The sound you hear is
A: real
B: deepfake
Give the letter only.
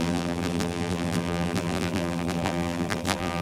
B